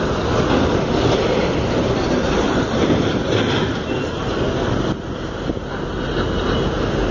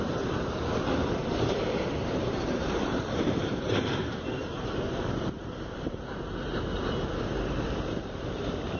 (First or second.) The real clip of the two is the first